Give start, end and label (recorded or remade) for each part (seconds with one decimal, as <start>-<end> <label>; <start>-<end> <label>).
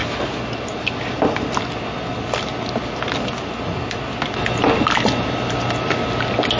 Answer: 0.0-6.6 recorded